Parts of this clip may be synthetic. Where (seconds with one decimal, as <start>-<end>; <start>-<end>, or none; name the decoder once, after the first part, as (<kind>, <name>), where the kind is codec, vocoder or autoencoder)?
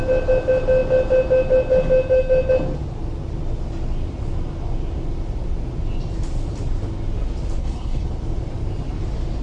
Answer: 7.6-8.1 (codec, HILCodec)